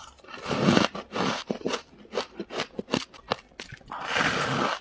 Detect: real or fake real